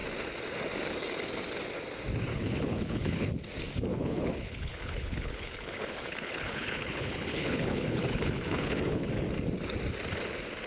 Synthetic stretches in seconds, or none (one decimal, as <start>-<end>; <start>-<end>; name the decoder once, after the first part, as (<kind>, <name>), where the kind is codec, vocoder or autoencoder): 2.3-3.3 (codec, HILCodec); 3.9-9.1